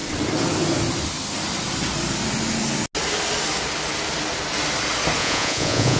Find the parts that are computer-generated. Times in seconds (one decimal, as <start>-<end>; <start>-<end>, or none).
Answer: 5.2-6.0